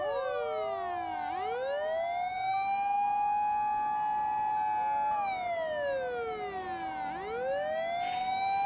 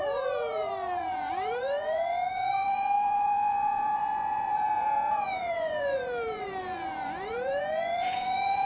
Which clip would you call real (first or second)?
first